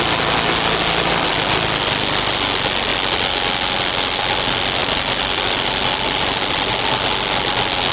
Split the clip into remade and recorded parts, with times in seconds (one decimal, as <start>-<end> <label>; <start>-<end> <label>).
0.0-4.8 recorded; 4.8-6.7 remade; 6.7-7.9 recorded